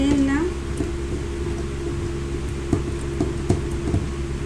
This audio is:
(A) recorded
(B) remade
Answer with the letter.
A